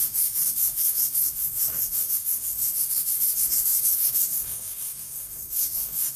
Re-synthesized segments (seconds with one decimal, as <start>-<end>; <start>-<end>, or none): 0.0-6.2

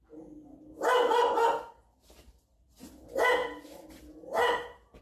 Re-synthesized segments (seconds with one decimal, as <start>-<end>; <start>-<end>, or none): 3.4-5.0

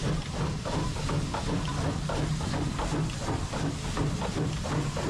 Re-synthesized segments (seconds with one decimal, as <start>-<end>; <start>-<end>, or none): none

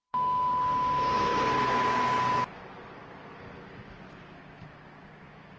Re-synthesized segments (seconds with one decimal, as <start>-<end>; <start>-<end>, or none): 0.0-0.5

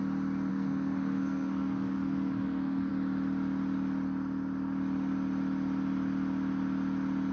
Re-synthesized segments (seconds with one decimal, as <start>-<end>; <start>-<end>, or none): 0.5-2.9